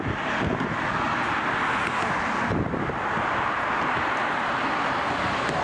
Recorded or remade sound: recorded